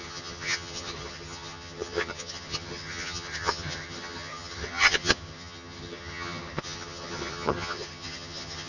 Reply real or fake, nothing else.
fake